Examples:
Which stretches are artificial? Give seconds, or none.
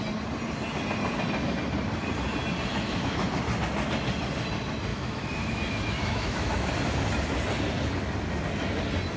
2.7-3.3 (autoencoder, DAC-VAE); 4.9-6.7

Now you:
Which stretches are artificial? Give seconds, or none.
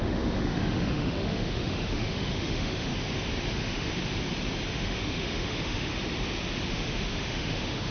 0.0-2.9 (autoencoder, DAC-VAE); 3.5-3.9; 4.7-5.9; 6.7-7.9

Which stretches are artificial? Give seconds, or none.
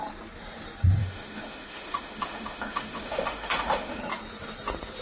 1.0-4.0 (autoencoder, DAC-VAE)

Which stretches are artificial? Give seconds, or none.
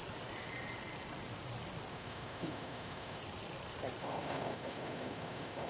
1.9-3.2 (autoencoder, DAC-VAE); 4.0-5.7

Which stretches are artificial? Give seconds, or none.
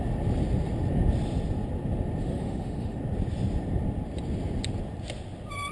2.2-3.0 (autoencoder, DAC-VAE)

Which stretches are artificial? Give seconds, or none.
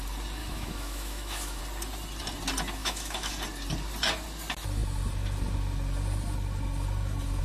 0.4-1.6 (autoencoder, DAC-VAE); 2.8-3.3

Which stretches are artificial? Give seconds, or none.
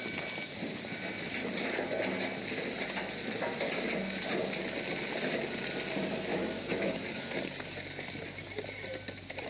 6.3-7.4 (autoencoder, DAC-VAE)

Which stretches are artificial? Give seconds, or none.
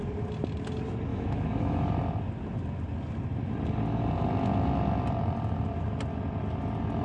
1.1-1.9 (autoencoder, DAC-VAE)